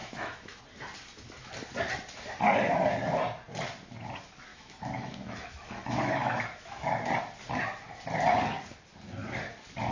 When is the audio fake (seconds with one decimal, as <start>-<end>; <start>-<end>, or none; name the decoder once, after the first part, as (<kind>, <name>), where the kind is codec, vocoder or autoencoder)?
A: 0.0-0.6 (autoencoder, DAC-VAE); 4.5-7.0